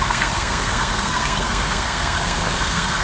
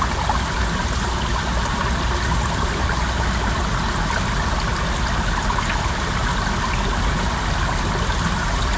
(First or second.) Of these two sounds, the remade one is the first